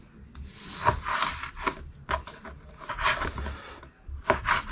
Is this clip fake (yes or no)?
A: no